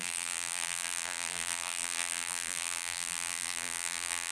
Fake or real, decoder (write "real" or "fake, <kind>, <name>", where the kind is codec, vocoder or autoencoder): fake, vocoder, BigVGAN v2